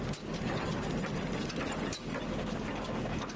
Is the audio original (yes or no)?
yes